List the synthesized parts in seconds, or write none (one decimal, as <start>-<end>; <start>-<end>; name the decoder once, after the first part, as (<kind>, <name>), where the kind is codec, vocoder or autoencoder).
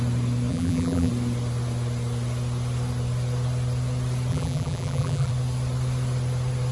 0.5-1.1 (vocoder, BigVGAN v2); 4.3-5.3